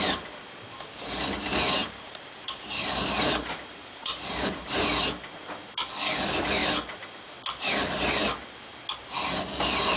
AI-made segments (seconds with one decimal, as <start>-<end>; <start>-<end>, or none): 1.8-4.8